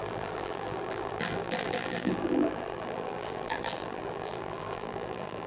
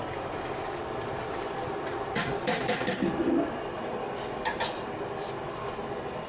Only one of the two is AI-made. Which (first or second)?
first